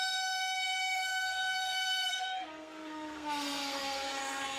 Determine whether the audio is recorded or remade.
remade